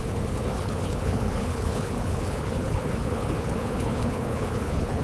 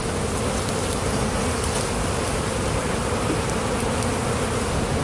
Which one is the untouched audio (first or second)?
second